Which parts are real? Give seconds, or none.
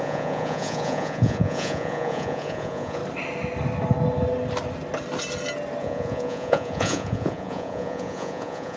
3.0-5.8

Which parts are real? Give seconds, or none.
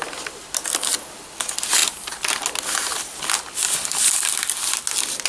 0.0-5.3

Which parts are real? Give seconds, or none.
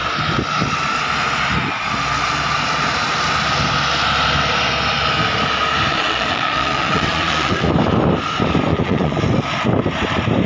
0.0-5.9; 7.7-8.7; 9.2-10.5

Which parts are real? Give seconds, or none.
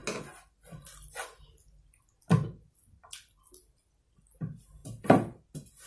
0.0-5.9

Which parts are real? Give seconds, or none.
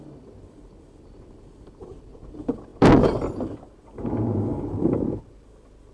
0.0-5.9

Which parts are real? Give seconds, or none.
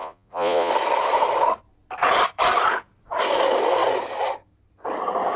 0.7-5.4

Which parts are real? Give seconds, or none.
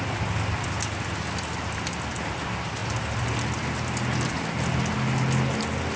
0.0-6.0